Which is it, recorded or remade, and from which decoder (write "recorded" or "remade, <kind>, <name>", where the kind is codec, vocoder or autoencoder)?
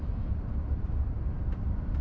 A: recorded